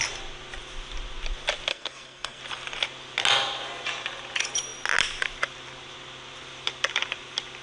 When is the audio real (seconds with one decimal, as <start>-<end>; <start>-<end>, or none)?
0.0-1.7; 2.4-7.6